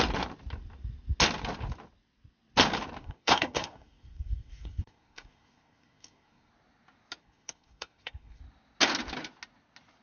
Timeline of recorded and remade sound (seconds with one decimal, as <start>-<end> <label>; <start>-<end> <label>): 0.0-3.0 recorded; 3.0-6.5 remade; 6.5-7.2 recorded; 7.2-8.4 remade; 8.4-10.0 recorded